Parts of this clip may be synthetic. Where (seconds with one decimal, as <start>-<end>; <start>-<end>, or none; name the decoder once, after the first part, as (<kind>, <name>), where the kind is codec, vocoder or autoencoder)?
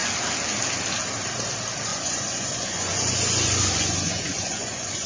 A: 1.9-5.1 (vocoder, Vocos)